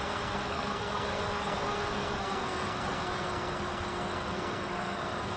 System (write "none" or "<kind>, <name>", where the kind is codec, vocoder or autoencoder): codec, SNAC